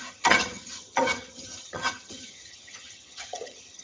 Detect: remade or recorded remade